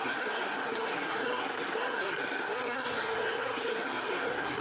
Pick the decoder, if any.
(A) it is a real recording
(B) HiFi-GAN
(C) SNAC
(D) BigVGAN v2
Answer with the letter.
C